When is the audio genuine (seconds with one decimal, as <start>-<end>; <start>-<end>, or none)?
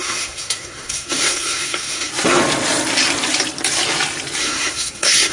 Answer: 2.1-4.4